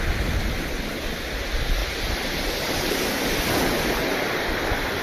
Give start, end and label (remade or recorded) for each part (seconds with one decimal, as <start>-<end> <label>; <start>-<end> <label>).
0.0-1.8 recorded; 1.8-3.5 remade; 3.5-5.0 recorded